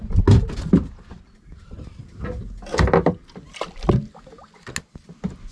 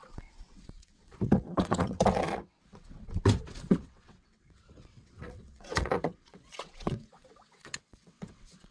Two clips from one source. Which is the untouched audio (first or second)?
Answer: first